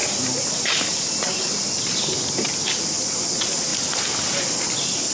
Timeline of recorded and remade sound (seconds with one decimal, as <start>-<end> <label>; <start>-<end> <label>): 0.0-5.1 recorded